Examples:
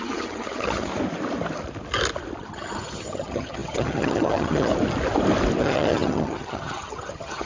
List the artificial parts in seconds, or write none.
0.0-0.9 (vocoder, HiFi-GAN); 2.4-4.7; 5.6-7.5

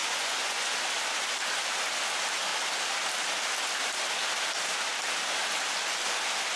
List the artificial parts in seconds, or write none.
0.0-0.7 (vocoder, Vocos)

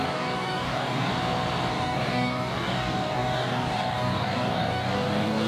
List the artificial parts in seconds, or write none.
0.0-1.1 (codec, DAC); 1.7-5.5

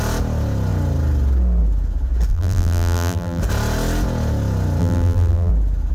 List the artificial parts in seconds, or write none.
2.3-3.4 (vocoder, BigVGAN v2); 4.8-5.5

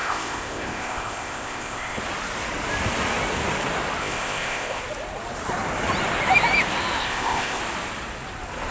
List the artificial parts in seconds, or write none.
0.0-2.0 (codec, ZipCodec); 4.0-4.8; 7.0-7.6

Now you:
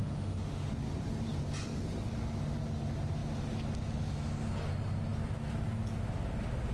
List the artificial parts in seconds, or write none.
0.0-0.7 (autoencoder, DAC-VAE)

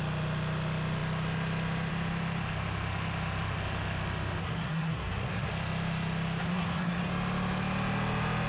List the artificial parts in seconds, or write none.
4.4-5.5 (codec, SNAC); 6.4-7.1